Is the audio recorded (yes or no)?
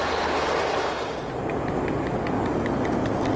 yes